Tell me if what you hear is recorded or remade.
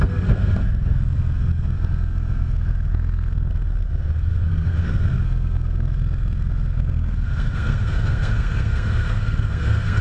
remade